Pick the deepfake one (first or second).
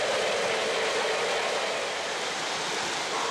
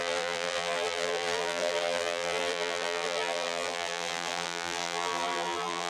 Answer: second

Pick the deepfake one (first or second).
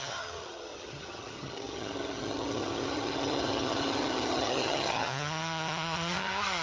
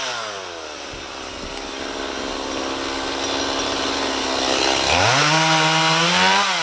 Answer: first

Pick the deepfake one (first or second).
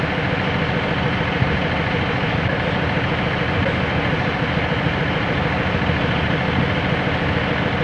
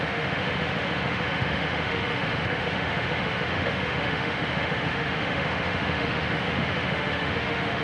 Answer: second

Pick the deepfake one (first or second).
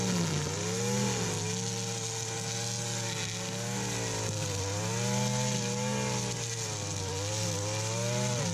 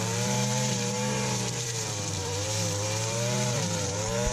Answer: second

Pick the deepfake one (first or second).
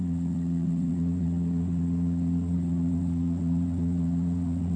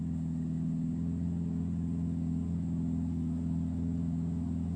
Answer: first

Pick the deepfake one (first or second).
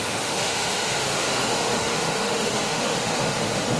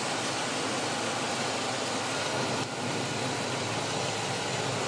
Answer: first